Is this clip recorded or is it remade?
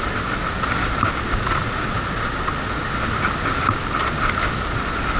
recorded